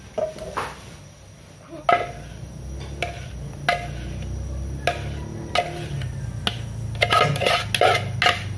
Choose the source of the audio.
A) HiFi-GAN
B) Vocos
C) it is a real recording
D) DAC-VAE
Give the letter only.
C